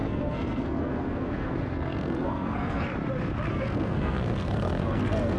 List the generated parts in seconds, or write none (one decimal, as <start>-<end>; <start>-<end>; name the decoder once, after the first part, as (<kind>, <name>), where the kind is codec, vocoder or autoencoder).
0.0-2.9 (codec, SNAC); 3.5-5.4